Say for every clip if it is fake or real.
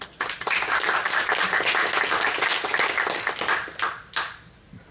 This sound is real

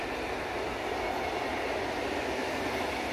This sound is real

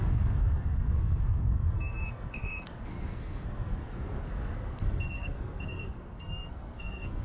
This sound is fake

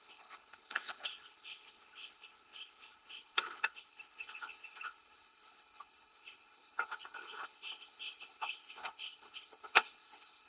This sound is fake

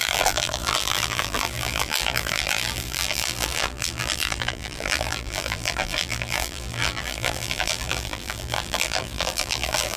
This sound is fake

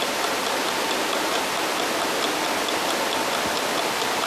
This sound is real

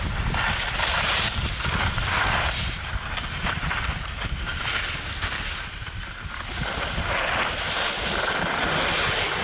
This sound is real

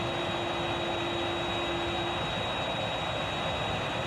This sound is real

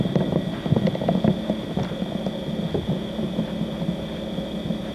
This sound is real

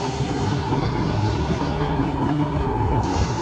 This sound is fake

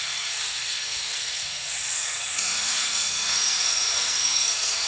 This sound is fake